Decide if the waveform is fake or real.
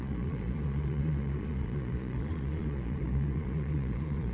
fake